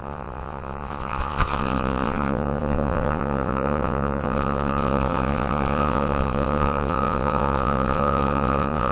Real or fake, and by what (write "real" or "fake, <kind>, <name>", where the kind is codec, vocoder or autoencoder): fake, vocoder, WaveNeXt